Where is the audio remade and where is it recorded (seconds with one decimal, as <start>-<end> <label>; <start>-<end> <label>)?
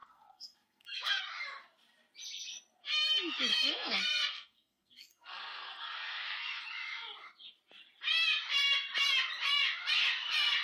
0.0-1.2 remade; 1.2-3.5 recorded; 3.5-6.6 remade; 6.6-10.6 recorded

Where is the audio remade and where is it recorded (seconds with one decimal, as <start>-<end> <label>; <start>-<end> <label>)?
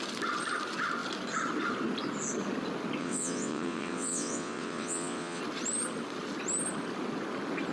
0.0-3.0 recorded; 3.0-5.4 remade; 5.4-7.7 recorded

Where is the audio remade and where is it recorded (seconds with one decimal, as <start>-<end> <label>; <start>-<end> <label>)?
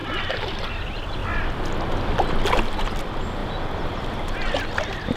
0.0-5.2 recorded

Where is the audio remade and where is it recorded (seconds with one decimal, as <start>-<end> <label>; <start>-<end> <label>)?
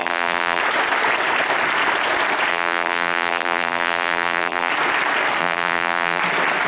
0.0-0.6 remade; 0.6-2.5 recorded; 2.5-4.7 remade; 4.7-5.4 recorded; 5.4-6.2 remade; 6.2-6.7 recorded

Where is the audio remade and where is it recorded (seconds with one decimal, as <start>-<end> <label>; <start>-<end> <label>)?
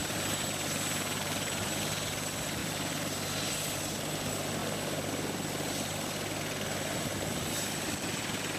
0.0-1.8 remade; 1.8-2.6 recorded; 2.6-3.5 remade; 3.5-8.6 recorded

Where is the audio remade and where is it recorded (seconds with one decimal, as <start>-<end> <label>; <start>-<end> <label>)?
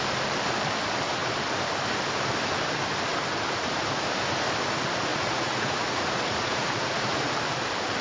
0.0-5.1 recorded; 5.1-7.3 remade; 7.3-8.0 recorded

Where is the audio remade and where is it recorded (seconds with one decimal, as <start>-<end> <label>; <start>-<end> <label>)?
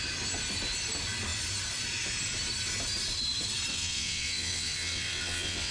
0.0-3.7 recorded; 3.7-5.7 remade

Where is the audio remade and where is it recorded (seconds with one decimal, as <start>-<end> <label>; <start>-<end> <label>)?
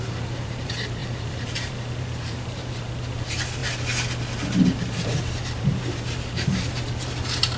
0.0-3.6 remade; 3.6-4.7 recorded; 4.7-7.6 remade